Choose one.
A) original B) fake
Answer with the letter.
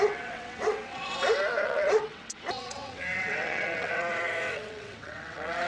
B